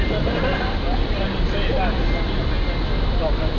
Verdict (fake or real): real